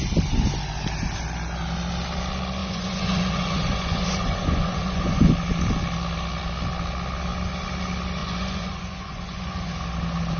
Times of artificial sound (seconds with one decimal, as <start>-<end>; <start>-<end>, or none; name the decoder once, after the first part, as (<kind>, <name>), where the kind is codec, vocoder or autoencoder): 2.6-5.3 (vocoder, Vocos); 8.2-9.7